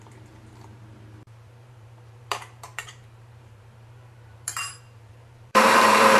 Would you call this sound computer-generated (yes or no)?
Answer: yes